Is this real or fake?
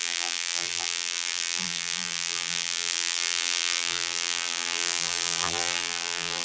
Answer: fake